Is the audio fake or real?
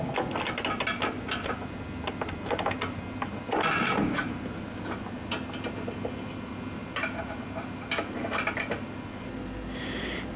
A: real